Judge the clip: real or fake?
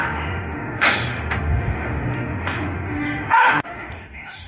fake